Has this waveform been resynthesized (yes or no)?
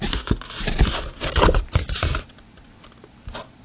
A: no